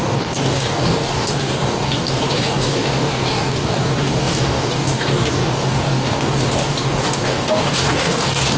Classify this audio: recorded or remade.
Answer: remade